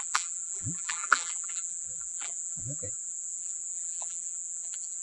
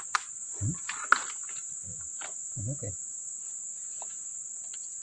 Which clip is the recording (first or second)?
second